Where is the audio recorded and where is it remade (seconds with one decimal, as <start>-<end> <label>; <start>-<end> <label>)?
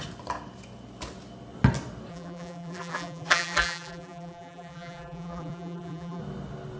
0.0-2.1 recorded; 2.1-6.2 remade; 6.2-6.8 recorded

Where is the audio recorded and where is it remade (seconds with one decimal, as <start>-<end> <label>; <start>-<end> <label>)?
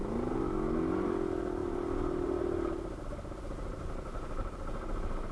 0.0-1.6 recorded; 1.6-2.4 remade; 2.4-5.3 recorded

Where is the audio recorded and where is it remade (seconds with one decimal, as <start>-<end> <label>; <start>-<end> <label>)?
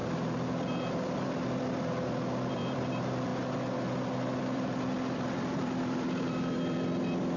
0.0-3.3 remade; 3.3-4.4 recorded; 4.4-7.4 remade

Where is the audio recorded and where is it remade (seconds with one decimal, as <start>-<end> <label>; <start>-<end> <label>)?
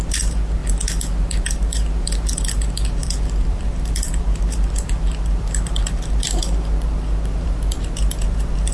0.0-0.6 remade; 0.6-1.2 recorded; 1.2-8.7 remade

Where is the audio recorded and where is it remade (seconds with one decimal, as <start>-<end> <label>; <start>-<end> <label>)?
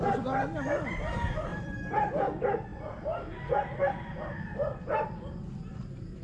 0.0-1.5 recorded; 1.5-2.2 remade; 2.2-6.2 recorded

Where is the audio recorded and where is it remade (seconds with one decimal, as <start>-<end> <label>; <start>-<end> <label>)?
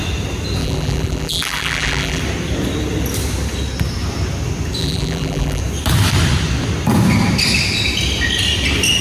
0.0-0.6 recorded; 0.6-2.2 remade; 2.2-4.8 recorded; 4.8-5.6 remade; 5.6-9.0 recorded